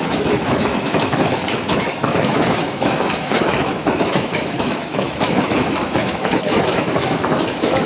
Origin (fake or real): fake